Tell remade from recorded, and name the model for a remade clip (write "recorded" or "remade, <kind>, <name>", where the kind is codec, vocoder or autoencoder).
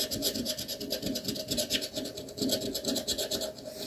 recorded